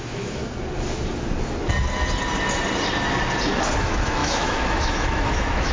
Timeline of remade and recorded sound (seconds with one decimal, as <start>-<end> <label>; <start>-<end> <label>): 0.0-0.4 remade; 0.4-3.8 recorded; 3.8-5.7 remade